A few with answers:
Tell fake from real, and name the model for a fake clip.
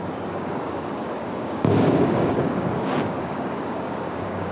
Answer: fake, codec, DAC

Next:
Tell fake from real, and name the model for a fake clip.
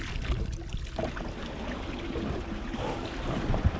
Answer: real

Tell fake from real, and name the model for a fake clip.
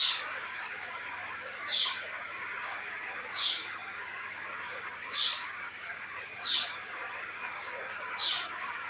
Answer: fake, codec, DAC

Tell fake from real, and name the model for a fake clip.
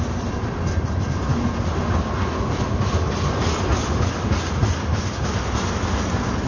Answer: real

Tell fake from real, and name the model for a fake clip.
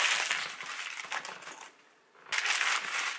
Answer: real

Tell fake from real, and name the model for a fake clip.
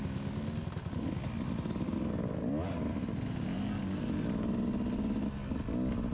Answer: real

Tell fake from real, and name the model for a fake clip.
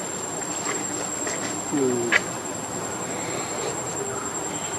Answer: real